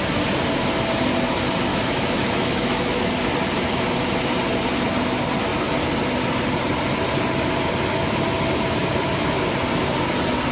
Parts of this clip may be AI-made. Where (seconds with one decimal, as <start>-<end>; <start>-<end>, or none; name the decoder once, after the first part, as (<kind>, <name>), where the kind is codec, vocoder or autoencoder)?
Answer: 1.7-3.1 (autoencoder, DAC-VAE)